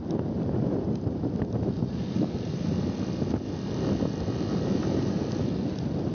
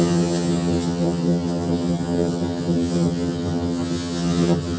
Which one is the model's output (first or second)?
second